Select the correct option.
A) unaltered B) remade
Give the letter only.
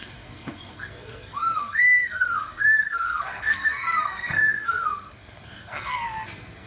B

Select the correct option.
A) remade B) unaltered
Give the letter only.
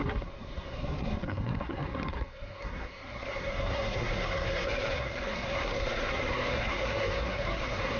A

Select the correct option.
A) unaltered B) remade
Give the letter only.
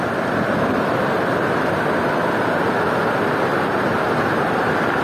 A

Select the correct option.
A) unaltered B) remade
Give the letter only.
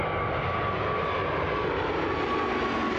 A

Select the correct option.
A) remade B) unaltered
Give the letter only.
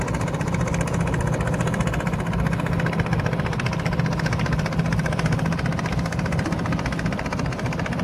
B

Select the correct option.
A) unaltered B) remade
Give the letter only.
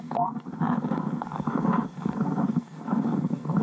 B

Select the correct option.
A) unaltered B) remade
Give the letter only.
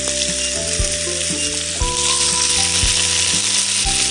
A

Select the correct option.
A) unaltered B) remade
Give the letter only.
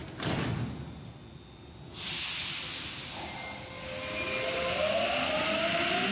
A